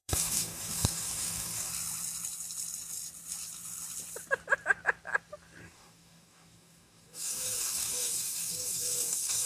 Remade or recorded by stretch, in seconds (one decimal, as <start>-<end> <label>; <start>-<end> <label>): 0.0-1.7 remade; 1.7-5.6 recorded; 5.6-9.5 remade